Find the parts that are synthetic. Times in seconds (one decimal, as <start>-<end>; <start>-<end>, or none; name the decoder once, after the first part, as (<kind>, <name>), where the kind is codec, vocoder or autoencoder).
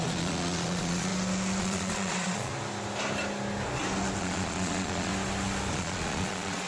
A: 0.0-1.1 (vocoder, Vocos); 1.6-2.5; 4.2-5.1; 5.7-6.7